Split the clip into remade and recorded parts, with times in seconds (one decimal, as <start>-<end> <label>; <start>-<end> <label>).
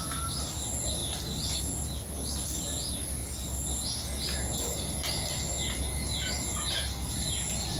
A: 0.0-7.8 recorded